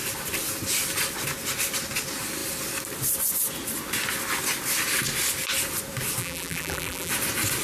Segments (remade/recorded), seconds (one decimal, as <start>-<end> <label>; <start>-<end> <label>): 0.0-6.2 recorded; 6.2-7.1 remade; 7.1-7.6 recorded